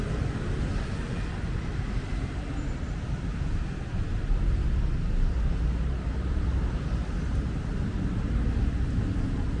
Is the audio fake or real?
real